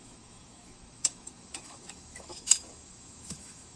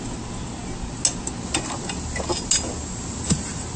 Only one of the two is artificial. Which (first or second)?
first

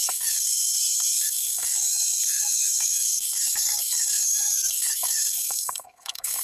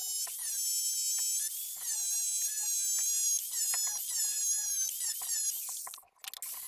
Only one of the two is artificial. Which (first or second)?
first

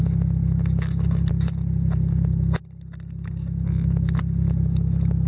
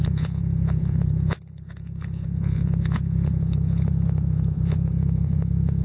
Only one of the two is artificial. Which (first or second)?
second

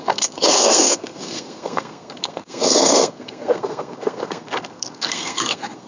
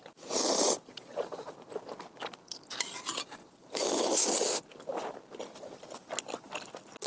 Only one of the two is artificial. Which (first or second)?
first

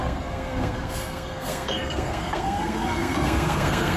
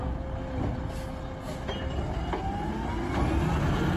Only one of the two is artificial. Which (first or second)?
first